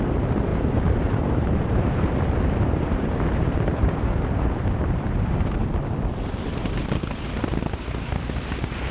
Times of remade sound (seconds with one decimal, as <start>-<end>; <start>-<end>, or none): 0.5-5.7